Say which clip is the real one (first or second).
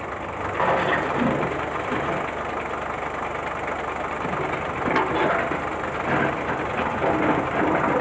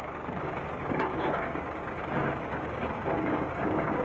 first